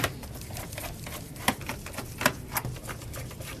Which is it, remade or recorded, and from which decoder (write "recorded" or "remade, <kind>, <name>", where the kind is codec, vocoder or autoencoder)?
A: remade, vocoder, BigVGAN v2